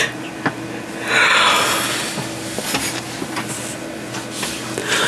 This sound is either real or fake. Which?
real